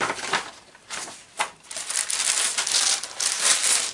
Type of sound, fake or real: real